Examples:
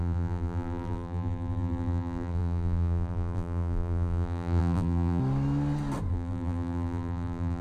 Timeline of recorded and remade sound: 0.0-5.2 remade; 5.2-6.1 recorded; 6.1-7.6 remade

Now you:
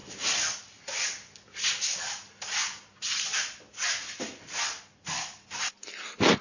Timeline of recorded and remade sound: 0.0-6.4 recorded

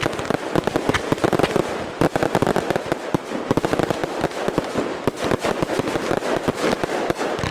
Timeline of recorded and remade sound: 0.0-4.0 recorded; 4.0-7.0 remade; 7.0-7.5 recorded